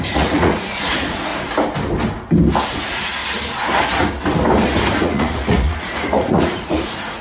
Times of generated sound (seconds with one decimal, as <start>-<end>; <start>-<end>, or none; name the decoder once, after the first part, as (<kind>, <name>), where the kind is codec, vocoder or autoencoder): 0.0-1.3 (vocoder, Vocos); 2.8-3.2; 4.9-7.2